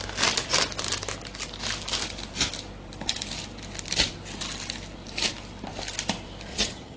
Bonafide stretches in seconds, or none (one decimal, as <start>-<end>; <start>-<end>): 0.0-6.5

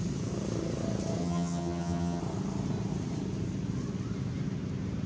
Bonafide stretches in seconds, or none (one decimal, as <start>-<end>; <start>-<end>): 0.0-1.2; 2.2-5.1

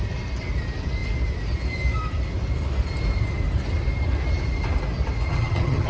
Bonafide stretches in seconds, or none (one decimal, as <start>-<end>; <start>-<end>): 0.0-5.3

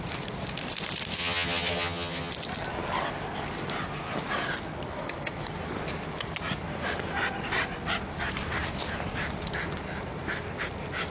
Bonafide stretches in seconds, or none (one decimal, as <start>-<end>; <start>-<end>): 0.0-1.2; 2.3-11.1